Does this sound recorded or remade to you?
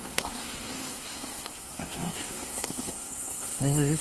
remade